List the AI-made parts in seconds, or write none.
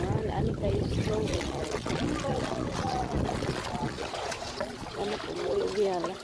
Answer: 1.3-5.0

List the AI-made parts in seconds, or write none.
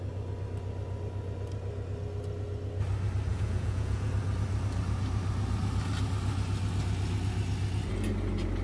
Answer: 3.3-4.1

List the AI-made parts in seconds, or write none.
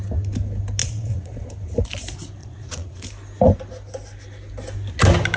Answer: 0.8-1.5; 2.4-3.0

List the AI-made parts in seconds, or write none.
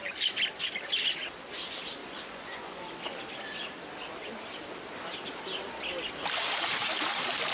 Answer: 2.0-2.8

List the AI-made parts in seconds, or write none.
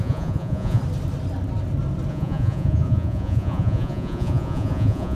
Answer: 0.0-0.8; 2.1-5.1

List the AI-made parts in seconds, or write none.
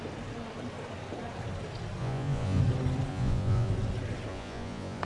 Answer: 2.0-2.6; 3.1-3.7; 4.3-5.0